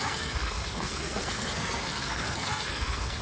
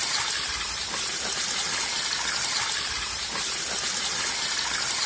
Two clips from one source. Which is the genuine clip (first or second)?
second